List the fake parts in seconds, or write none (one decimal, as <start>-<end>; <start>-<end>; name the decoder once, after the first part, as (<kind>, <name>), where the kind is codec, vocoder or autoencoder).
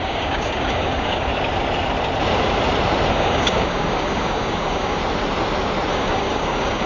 0.0-1.3 (codec, DAC); 3.1-5.0; 5.9-6.9